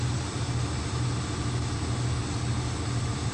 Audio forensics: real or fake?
real